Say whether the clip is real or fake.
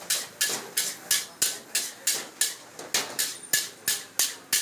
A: real